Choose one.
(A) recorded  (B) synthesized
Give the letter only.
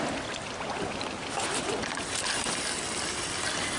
A